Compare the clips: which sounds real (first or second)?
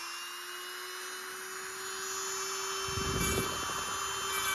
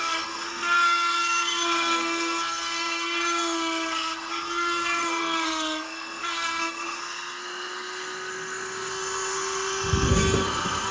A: first